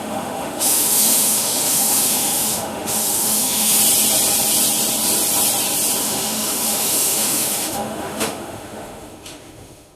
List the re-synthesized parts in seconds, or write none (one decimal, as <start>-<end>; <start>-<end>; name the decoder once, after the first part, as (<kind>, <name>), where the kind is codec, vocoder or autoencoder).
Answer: 0.0-3.8 (autoencoder, DAC-VAE); 6.0-10.0